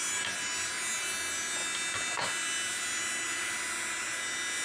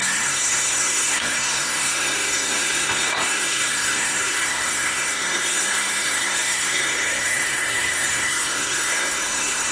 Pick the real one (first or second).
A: first